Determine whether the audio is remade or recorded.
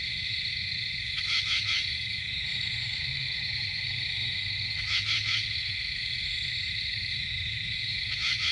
remade